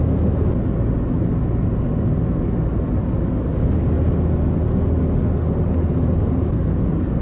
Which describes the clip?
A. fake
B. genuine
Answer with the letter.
B